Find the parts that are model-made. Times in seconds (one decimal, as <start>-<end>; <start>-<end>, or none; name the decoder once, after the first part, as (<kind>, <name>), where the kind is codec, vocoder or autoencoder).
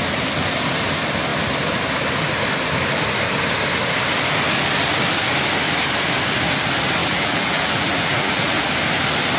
7.0-8.7 (vocoder, BigVGAN v2)